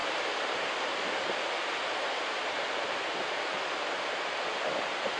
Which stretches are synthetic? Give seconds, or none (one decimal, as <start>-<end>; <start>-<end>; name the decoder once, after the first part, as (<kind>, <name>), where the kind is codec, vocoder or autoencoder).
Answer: none